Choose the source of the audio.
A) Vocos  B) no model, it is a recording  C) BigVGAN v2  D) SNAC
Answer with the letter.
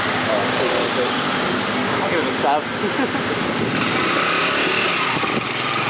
B